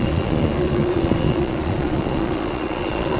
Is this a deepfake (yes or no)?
yes